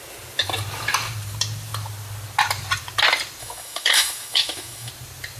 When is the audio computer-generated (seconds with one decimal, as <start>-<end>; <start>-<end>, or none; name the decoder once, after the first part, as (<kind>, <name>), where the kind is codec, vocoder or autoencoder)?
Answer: 3.4-4.9 (autoencoder, DAC-VAE)